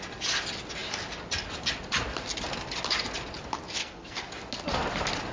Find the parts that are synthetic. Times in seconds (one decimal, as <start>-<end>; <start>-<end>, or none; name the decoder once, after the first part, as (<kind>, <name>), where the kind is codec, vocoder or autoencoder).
3.8-4.3 (codec, SNAC)